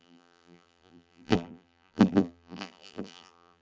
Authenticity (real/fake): fake